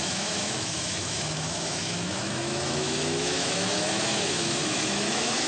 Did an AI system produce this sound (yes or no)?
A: yes